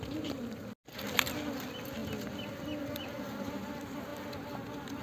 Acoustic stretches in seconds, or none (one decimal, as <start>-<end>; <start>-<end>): 0.0-5.0